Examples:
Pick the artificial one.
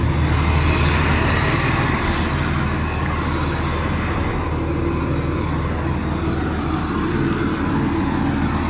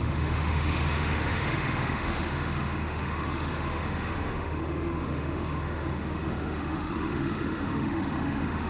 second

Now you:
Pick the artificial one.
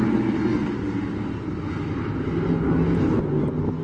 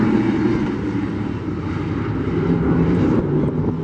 second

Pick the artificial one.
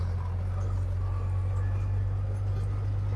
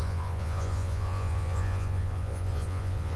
second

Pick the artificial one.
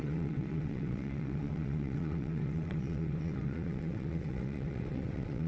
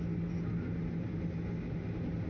first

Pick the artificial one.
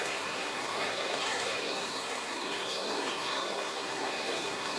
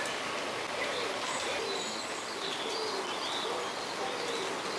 first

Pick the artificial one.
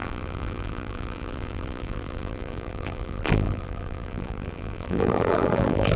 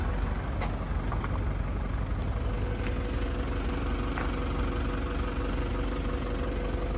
first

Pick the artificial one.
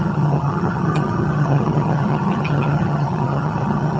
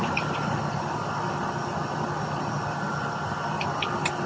first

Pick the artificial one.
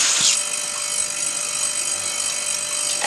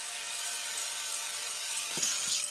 second